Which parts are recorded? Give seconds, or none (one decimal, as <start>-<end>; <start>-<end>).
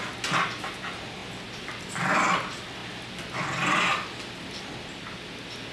0.0-5.7